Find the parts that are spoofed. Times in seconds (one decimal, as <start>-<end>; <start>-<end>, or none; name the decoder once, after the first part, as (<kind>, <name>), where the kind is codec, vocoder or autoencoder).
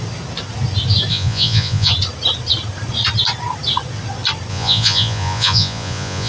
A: 1.1-1.9 (vocoder, Vocos); 4.5-6.3